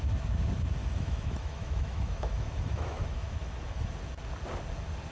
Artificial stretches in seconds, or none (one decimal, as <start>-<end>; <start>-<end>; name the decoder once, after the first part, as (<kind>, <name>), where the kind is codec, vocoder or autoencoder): 0.8-3.9 (autoencoder, DAC-VAE)